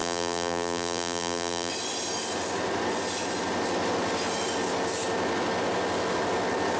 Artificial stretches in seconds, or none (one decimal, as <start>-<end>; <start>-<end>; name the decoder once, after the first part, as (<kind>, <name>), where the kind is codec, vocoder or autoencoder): 0.0-1.7 (vocoder, BigVGAN v2)